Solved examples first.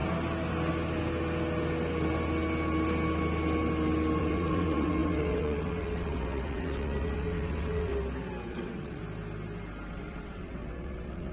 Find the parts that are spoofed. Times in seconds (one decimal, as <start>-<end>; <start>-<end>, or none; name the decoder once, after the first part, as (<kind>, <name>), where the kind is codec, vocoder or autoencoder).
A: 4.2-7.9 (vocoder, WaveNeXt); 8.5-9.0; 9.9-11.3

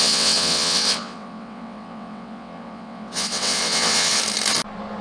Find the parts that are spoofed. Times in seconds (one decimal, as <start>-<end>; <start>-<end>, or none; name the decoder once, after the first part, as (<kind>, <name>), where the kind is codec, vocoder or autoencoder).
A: 0.0-4.2 (vocoder, WaveNeXt)

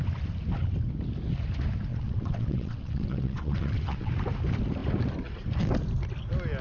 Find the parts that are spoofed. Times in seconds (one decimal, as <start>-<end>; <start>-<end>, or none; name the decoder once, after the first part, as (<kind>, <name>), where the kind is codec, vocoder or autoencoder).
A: 1.9-4.1 (vocoder, WaveNeXt)

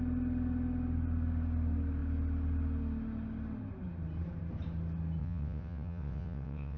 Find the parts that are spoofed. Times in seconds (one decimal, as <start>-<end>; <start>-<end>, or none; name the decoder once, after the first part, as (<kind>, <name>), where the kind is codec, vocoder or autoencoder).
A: 5.2-6.8 (vocoder, WaveNeXt)

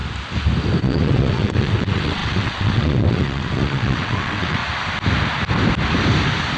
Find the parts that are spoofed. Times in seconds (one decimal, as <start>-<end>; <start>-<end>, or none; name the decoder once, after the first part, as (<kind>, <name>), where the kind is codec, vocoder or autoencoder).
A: 0.8-4.6 (vocoder, WaveNeXt)

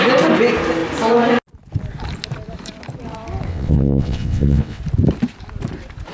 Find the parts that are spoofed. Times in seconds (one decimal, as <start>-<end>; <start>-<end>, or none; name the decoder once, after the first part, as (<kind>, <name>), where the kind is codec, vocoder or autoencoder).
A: 3.5-4.8 (vocoder, WaveNeXt)

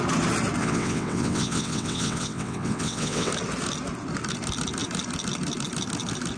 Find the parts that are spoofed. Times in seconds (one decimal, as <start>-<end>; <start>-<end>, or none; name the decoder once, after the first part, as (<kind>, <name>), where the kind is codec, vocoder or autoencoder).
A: 0.6-3.3 (vocoder, WaveNeXt)